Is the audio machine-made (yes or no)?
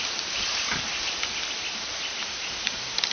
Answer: yes